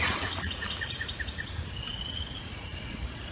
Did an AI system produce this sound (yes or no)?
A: yes